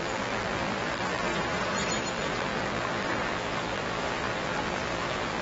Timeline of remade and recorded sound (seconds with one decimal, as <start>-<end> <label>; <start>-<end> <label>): 0.0-1.3 remade; 1.3-2.1 recorded; 2.1-5.4 remade